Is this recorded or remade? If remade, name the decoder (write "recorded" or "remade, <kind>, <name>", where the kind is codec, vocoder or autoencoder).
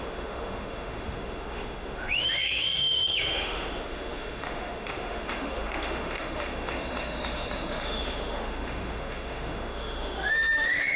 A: remade, autoencoder, DAC-VAE